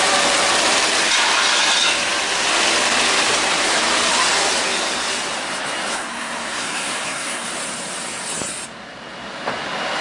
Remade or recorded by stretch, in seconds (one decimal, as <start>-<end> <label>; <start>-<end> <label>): 0.0-5.9 recorded; 5.9-7.5 remade; 7.5-10.0 recorded